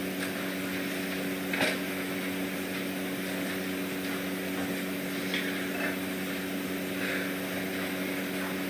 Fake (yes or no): no